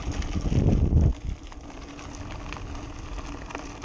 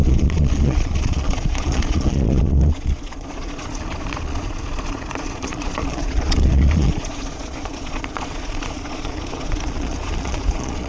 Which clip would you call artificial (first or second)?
second